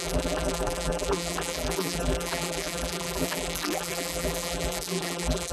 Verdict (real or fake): fake